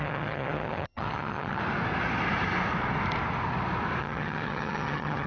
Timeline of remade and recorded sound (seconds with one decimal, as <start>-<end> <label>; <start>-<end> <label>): 0.0-1.6 remade; 1.6-4.0 recorded; 4.0-5.3 remade